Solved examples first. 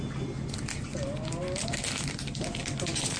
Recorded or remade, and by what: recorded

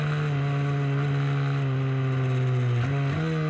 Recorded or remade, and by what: recorded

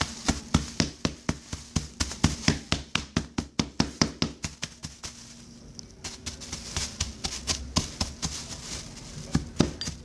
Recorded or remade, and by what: recorded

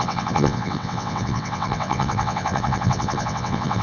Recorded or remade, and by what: remade, vocoder, WaveNeXt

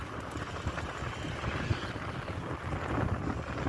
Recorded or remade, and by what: recorded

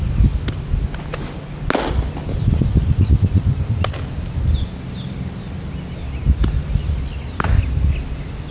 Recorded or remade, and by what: recorded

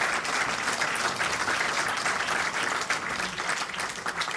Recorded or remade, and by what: recorded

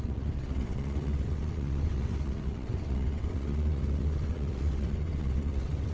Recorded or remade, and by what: remade, vocoder, WaveNeXt